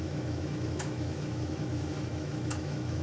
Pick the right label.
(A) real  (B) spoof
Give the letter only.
B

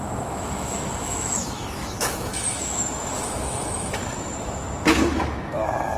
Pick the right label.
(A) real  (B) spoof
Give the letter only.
B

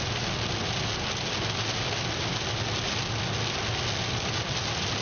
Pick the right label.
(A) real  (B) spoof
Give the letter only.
A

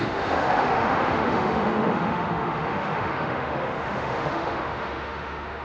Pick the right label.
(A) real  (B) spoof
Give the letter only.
B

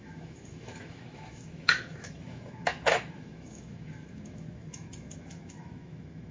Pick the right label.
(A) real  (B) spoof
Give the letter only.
B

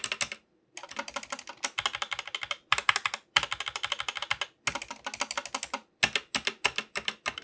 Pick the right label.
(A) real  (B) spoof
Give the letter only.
A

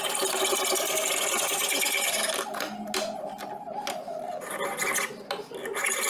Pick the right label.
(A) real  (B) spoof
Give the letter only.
A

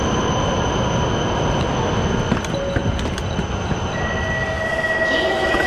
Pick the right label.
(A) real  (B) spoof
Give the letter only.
A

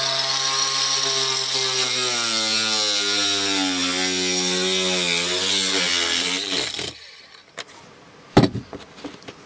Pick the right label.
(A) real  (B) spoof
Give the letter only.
A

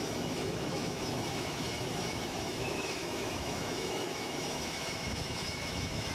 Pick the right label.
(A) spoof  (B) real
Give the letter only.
A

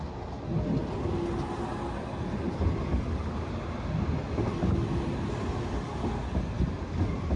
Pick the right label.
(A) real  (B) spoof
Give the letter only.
A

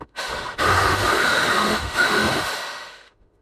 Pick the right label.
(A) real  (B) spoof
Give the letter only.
B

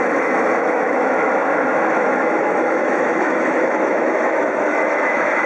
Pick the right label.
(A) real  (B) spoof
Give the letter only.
B